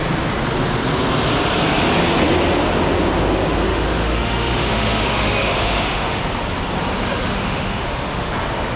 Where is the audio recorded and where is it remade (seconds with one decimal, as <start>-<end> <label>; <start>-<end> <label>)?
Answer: 0.0-3.7 recorded; 3.7-6.2 remade; 6.2-7.3 recorded; 7.3-8.3 remade; 8.3-8.8 recorded